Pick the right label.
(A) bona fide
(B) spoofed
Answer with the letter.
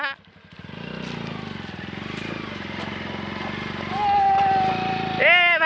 A